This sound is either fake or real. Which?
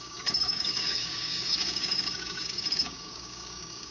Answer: fake